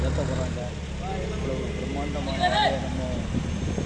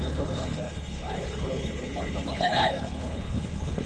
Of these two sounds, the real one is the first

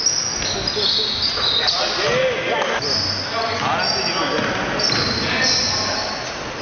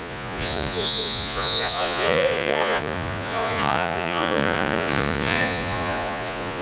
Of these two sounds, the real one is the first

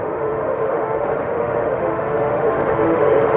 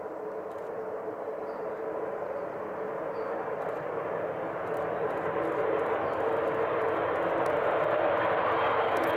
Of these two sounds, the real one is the second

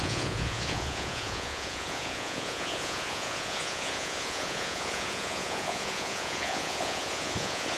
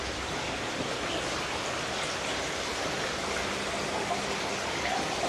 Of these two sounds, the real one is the second